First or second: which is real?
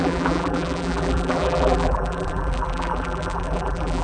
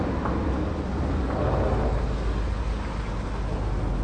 second